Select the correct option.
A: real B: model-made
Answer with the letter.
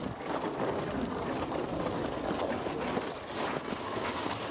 A